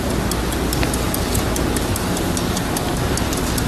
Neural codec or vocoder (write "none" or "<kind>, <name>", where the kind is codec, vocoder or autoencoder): none